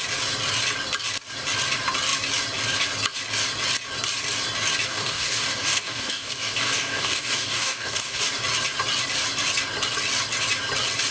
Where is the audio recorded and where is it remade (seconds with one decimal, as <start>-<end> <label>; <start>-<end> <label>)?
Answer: 0.0-4.9 recorded; 4.9-8.3 remade; 8.3-11.1 recorded